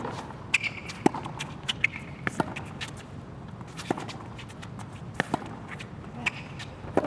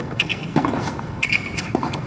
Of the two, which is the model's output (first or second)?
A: second